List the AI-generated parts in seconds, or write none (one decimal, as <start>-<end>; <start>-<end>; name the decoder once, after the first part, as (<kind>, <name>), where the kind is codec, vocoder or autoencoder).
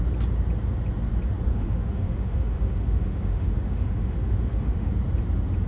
1.5-4.9 (autoencoder, DAC-VAE)